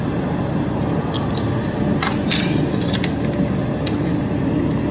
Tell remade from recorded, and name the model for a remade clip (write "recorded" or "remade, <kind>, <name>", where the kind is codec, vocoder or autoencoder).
recorded